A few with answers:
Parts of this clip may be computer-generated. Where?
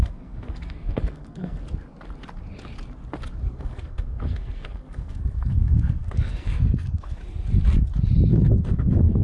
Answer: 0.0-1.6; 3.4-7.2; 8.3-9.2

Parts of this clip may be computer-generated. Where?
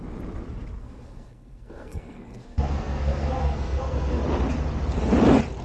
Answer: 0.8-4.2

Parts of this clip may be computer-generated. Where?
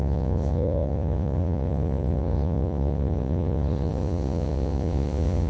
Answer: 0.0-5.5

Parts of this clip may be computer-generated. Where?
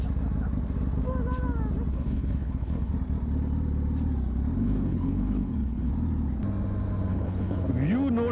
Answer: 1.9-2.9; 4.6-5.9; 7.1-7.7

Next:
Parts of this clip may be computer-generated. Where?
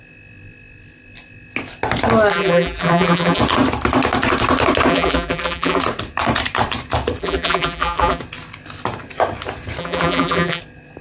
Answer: 2.3-3.4; 4.9-5.8; 7.2-8.2; 9.8-10.6